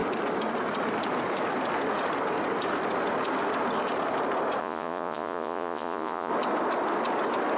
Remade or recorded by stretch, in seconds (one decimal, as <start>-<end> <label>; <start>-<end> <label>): 0.0-4.6 recorded; 4.6-6.3 remade; 6.3-7.6 recorded